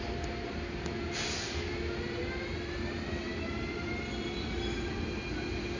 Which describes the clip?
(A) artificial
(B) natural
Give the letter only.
B